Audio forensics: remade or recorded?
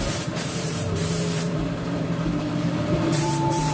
remade